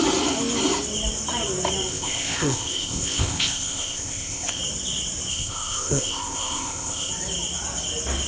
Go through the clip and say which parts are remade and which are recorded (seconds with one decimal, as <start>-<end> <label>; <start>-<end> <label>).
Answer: 0.0-1.9 recorded; 1.9-4.6 remade; 4.6-5.3 recorded; 5.3-7.1 remade; 7.1-8.3 recorded